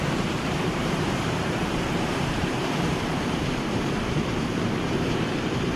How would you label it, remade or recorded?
remade